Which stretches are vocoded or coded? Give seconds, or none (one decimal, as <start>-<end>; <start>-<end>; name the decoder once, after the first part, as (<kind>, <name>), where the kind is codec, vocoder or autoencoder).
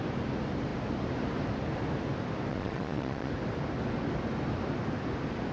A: 2.5-3.3 (vocoder, Vocos)